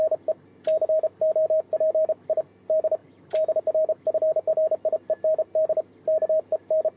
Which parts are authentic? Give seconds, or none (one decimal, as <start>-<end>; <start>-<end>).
0.0-3.0; 3.6-7.0